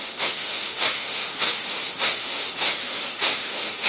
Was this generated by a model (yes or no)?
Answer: yes